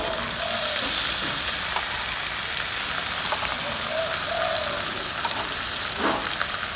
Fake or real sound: real